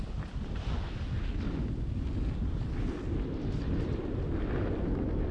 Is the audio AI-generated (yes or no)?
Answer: no